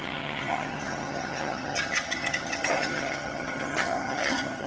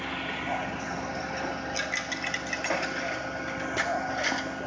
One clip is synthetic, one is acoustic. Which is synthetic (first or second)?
first